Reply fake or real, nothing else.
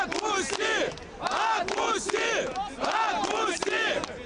real